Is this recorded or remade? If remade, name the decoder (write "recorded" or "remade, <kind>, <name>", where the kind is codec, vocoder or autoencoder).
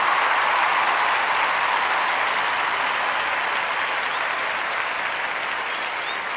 recorded